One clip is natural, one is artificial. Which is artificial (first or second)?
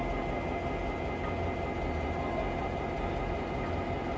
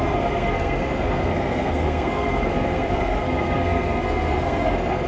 second